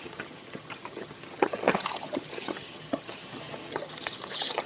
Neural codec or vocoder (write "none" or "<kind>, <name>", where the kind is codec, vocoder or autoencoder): vocoder, HiFi-GAN